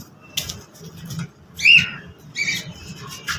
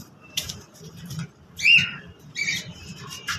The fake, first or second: second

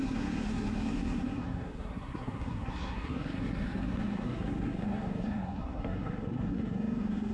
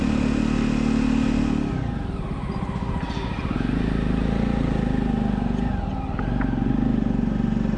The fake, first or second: first